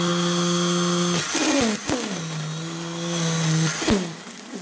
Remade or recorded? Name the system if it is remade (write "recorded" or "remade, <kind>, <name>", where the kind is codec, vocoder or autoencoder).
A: recorded